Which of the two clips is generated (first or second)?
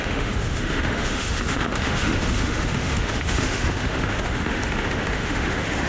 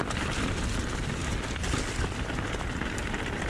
first